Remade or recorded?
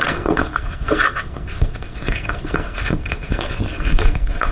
remade